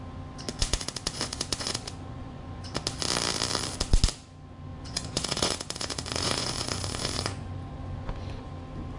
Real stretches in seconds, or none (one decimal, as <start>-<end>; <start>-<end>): 0.0-0.5; 2.8-4.7; 8.5-9.0